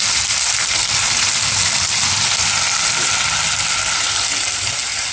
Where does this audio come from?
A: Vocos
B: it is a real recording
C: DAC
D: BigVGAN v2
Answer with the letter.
B